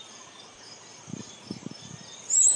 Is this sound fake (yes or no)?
no